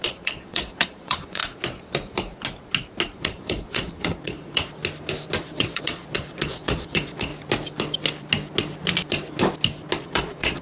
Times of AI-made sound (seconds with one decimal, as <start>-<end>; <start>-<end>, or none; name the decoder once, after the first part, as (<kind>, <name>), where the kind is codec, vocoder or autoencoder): 0.0-1.4 (vocoder, Vocos); 3.2-4.8; 5.4-7.3; 10.0-10.6